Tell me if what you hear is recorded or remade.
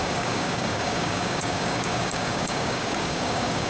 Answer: remade